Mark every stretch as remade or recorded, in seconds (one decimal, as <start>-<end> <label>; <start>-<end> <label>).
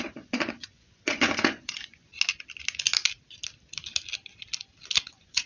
0.0-2.1 remade; 2.1-5.1 recorded; 5.1-5.5 remade